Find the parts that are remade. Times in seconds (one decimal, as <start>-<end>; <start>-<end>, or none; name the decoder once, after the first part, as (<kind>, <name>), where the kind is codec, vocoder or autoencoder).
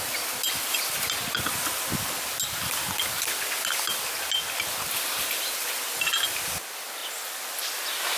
none